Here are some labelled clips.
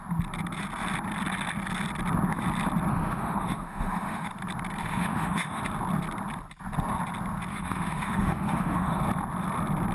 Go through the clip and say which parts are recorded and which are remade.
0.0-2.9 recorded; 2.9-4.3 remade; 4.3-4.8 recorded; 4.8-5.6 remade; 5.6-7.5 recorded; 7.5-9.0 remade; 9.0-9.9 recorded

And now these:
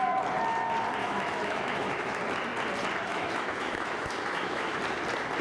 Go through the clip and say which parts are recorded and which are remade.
0.0-1.0 recorded; 1.0-2.2 remade; 2.2-3.1 recorded; 3.1-4.8 remade; 4.8-5.4 recorded

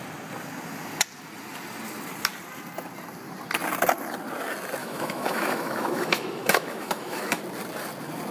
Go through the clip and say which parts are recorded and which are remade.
0.0-4.8 recorded; 4.8-7.4 remade; 7.4-8.3 recorded

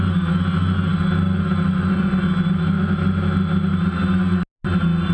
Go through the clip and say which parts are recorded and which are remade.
0.0-5.1 recorded

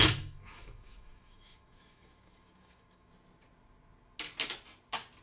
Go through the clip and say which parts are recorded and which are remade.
0.0-3.1 remade; 3.1-5.2 recorded

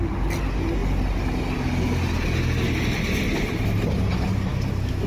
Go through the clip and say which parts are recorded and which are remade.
0.0-4.5 recorded; 4.5-5.1 remade

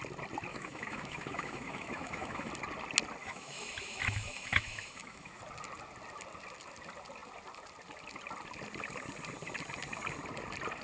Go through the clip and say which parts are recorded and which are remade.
0.0-0.5 recorded; 0.5-2.5 remade; 2.5-3.2 recorded; 3.2-5.4 remade; 5.4-10.8 recorded